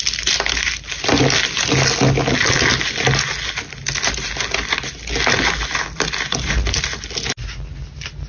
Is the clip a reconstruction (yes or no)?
no